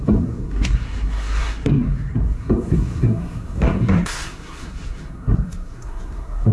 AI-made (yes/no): yes